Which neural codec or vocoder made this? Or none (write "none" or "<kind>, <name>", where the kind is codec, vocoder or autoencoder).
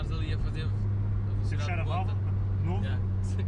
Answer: none